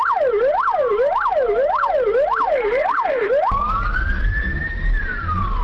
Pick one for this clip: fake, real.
fake